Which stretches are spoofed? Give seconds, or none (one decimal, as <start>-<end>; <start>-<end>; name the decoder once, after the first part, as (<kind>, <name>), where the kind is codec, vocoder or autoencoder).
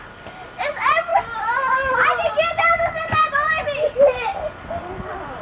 none